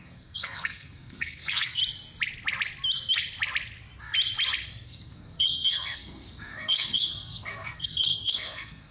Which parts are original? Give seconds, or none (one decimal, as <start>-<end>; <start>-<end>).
1.8-4.7